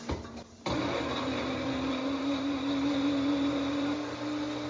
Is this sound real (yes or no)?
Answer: yes